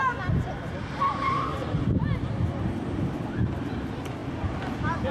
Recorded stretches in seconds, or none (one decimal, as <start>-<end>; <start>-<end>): 0.0-5.1